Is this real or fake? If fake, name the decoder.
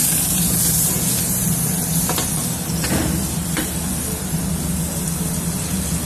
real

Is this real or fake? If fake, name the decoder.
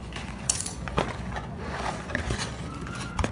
fake, vocoder, Vocos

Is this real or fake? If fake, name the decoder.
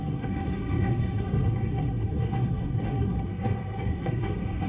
fake, codec, SNAC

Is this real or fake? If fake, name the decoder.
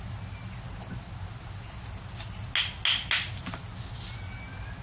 real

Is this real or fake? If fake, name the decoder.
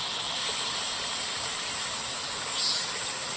real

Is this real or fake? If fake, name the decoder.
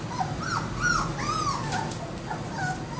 real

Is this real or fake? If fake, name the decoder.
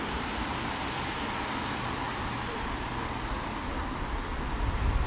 real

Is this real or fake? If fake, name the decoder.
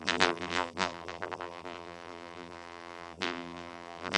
fake, vocoder, BigVGAN v2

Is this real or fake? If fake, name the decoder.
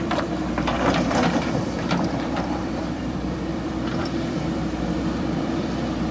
fake, vocoder, BigVGAN v2